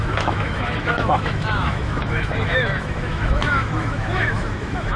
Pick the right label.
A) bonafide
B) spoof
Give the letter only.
B